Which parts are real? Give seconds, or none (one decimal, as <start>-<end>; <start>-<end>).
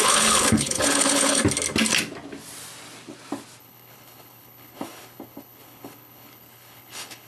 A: 1.4-3.6